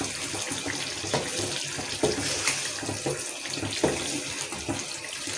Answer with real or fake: real